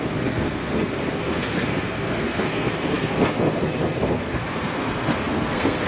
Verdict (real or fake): fake